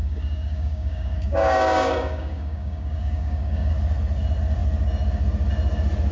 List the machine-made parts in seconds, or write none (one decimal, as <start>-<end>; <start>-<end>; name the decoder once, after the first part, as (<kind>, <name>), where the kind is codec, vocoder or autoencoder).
0.0-3.7 (codec, DAC)